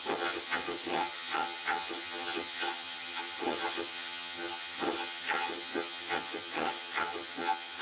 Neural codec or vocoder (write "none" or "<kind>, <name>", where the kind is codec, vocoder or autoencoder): vocoder, HiFi-GAN